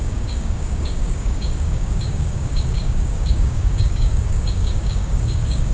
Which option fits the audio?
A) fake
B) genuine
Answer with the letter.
A